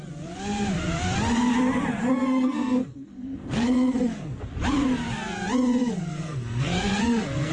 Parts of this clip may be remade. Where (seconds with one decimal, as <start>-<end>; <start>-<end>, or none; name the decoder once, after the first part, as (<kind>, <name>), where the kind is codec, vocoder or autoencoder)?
2.0-4.4 (codec, SNAC); 5.8-7.5